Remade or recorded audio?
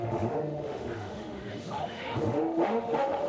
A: remade